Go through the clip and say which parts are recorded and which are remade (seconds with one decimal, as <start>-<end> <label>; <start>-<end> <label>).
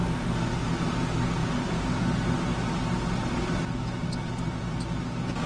0.0-5.5 recorded